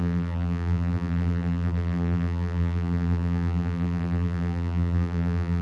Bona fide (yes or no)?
no